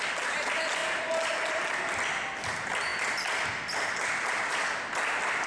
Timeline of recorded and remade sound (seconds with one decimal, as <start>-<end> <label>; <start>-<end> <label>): 0.0-5.5 recorded